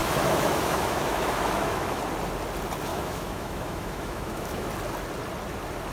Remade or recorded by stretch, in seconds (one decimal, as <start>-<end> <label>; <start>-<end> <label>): 0.0-2.0 remade; 2.0-2.9 recorded; 2.9-4.7 remade; 4.7-5.9 recorded